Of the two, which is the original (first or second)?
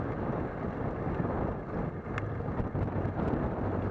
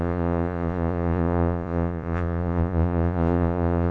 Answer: first